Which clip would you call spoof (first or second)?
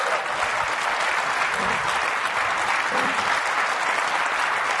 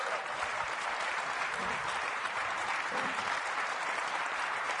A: second